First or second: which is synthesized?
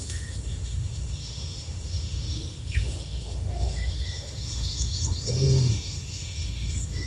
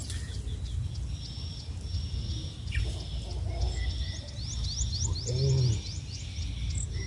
first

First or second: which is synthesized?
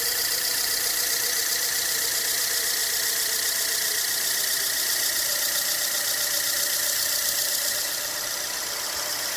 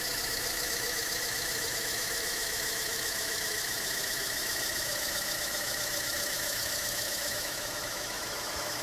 second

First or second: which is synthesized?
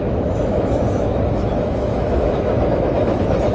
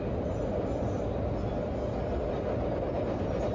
first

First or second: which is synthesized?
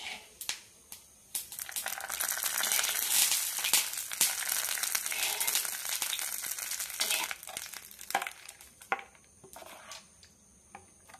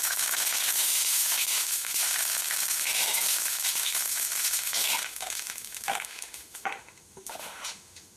second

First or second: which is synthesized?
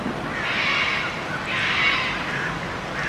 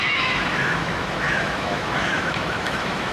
second